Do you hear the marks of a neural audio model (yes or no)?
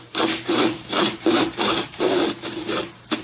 yes